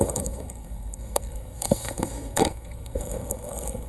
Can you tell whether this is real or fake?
fake